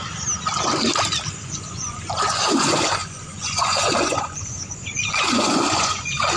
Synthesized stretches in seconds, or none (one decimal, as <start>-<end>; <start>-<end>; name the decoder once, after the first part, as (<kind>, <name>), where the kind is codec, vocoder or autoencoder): 1.3-6.4 (vocoder, Vocos)